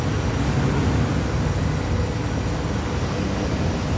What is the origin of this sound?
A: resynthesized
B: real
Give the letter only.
B